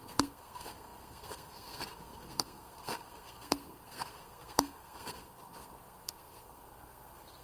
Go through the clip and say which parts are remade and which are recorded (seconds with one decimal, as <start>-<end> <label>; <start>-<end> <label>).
0.0-7.4 remade